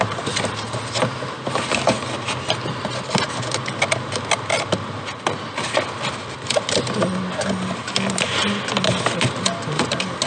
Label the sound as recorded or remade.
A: recorded